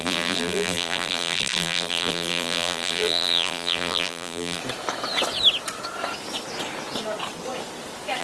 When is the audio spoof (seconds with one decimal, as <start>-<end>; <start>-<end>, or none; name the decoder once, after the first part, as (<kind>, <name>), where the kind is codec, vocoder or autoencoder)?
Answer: 0.0-4.6 (vocoder, BigVGAN v2)